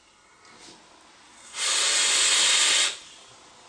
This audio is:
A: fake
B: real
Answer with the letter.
B